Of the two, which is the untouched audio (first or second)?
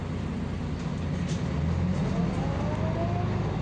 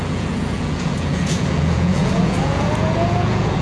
first